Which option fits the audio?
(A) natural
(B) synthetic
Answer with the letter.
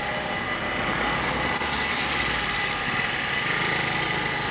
A